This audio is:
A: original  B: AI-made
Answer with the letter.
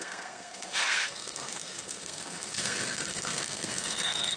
B